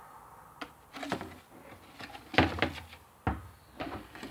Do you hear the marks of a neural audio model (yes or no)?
no